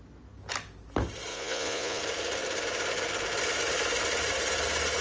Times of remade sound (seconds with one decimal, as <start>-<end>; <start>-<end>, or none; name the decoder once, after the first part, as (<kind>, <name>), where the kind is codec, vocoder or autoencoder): 1.3-2.0 (vocoder, Vocos)